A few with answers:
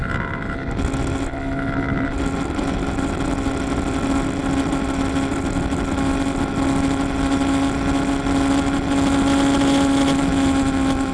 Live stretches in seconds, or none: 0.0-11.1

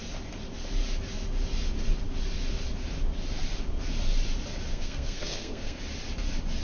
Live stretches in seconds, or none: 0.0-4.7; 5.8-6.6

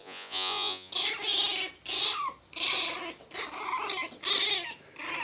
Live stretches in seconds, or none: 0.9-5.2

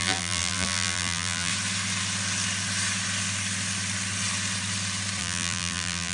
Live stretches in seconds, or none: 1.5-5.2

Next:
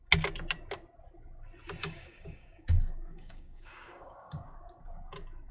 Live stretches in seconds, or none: 0.0-1.8; 4.8-5.5

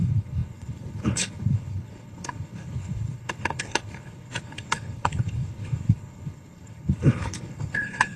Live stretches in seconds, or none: none